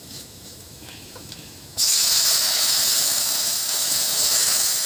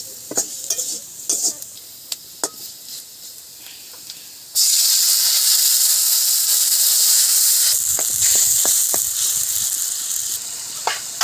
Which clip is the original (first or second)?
second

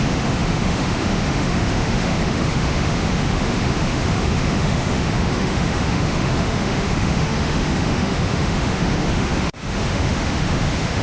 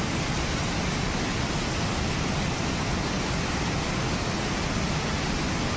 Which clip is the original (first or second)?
second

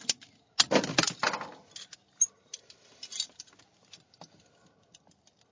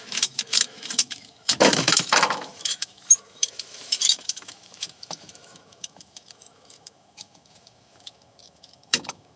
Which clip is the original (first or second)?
first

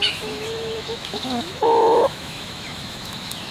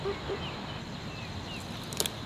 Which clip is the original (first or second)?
second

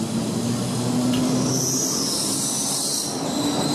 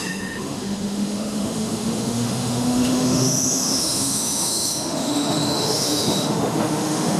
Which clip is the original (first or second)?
first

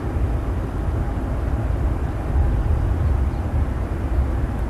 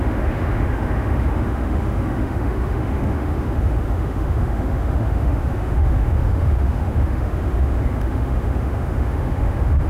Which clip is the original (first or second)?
first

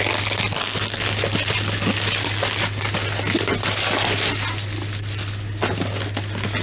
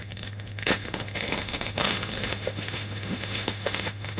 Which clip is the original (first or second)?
first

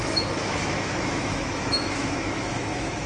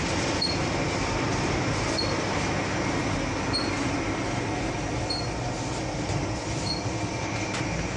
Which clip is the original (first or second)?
second